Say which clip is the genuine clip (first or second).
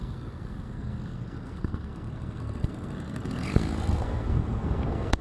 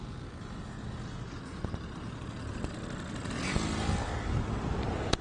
second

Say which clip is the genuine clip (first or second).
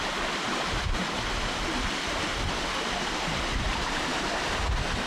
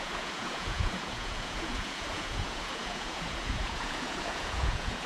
first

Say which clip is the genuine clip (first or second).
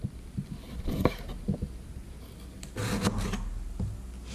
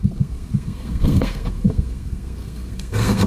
first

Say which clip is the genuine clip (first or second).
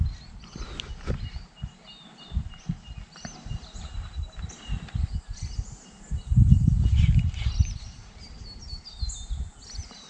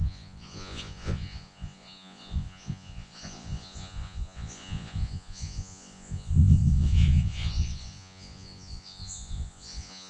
first